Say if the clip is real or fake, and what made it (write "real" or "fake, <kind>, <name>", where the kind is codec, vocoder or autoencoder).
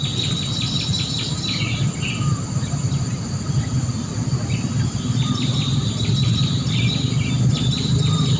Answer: real